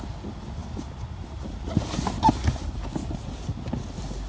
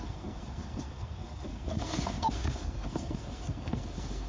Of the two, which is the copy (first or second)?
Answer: second